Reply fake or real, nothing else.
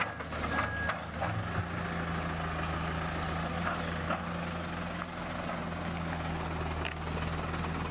real